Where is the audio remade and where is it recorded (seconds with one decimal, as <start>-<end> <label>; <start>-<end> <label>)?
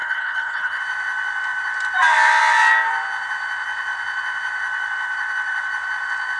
0.0-0.8 remade; 0.8-6.4 recorded